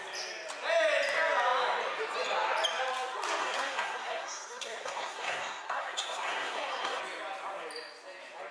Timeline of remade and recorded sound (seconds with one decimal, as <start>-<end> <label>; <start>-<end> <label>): 0.0-3.4 recorded; 3.4-7.0 remade; 7.0-8.5 recorded